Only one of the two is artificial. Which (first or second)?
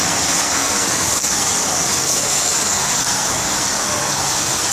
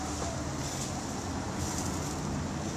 first